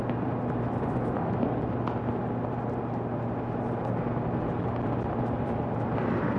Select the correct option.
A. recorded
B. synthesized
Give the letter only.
A